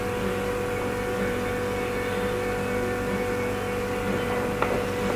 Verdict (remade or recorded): recorded